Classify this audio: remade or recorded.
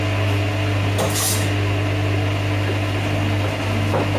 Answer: recorded